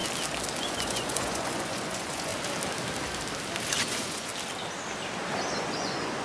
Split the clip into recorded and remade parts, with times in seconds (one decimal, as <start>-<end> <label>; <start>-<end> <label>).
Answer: 0.0-0.6 recorded; 0.6-2.3 remade; 2.3-3.8 recorded; 3.8-4.3 remade; 4.3-5.6 recorded; 5.6-6.2 remade